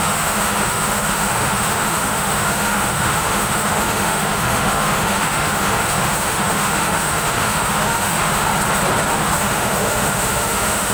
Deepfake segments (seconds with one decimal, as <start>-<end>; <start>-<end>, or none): 0.0-8.5; 9.1-10.9